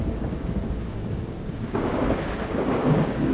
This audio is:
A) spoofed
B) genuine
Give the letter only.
A